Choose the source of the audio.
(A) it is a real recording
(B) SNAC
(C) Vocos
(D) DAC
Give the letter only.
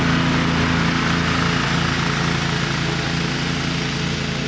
A